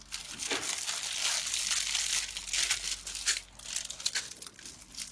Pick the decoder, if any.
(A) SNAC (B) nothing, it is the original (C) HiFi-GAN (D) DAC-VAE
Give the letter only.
B